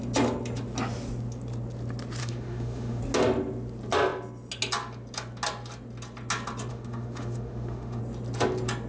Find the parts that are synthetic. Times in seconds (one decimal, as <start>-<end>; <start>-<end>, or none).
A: 2.2-3.0; 6.7-8.0